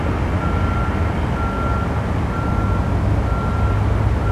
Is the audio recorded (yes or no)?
yes